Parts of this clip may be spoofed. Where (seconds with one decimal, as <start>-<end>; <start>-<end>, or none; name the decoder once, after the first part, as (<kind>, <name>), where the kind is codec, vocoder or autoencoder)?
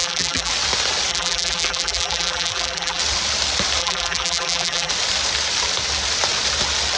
0.0-0.5 (vocoder, BigVGAN v2); 1.1-3.0; 3.8-4.9